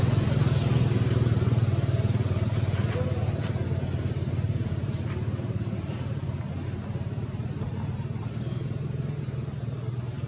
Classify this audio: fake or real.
real